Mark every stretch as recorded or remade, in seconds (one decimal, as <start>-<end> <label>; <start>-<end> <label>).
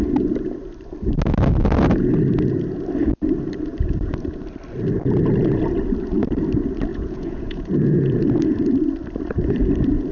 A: 0.0-6.9 recorded; 6.9-8.1 remade; 8.1-10.1 recorded